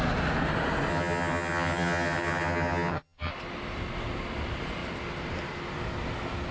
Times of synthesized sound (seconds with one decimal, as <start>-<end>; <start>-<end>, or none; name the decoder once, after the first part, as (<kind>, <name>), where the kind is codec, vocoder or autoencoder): 0.9-3.3 (vocoder, HiFi-GAN)